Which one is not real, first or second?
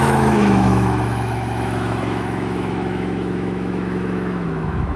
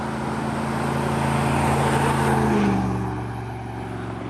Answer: first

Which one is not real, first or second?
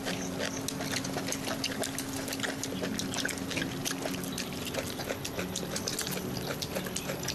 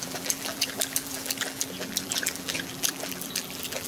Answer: second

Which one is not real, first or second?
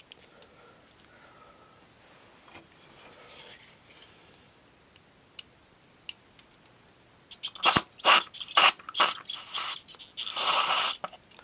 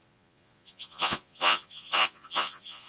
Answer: second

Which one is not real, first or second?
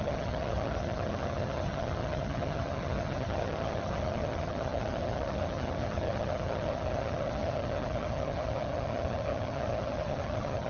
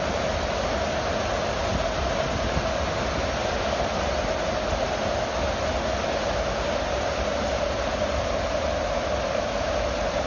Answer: first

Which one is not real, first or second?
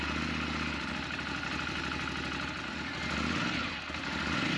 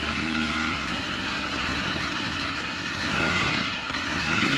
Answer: second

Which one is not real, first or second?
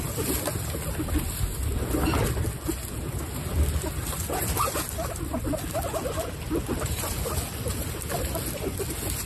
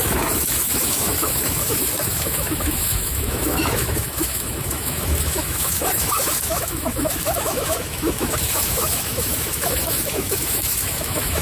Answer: second